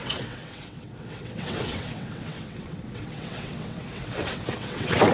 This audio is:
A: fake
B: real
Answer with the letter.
A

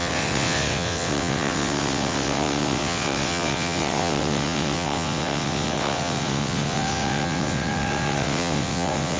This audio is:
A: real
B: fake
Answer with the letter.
B